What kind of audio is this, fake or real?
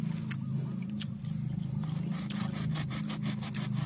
real